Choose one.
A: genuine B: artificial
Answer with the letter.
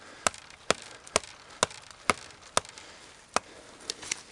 A